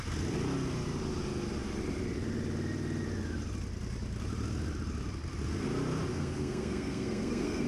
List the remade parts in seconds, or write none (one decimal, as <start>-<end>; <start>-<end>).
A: 6.1-7.7